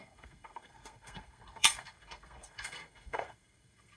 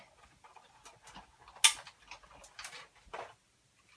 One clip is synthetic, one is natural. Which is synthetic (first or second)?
first